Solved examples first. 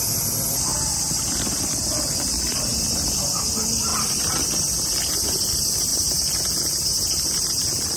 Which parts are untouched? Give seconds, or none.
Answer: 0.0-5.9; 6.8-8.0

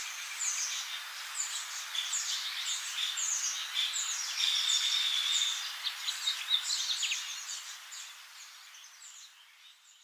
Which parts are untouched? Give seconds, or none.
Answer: 2.7-3.7; 5.5-6.4

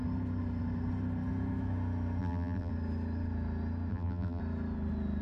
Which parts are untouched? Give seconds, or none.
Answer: 0.0-2.2; 2.7-3.9; 4.4-5.2

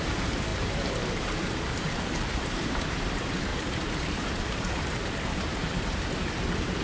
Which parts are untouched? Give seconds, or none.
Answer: none

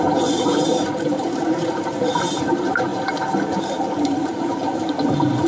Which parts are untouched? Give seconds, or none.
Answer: 2.9-3.6

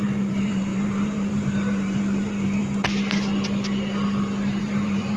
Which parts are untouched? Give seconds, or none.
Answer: 2.6-4.6